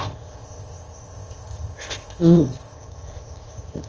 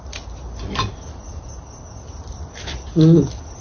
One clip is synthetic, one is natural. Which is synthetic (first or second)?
first